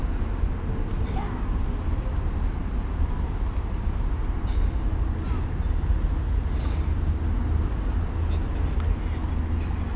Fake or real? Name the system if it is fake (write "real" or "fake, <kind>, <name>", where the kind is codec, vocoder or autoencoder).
real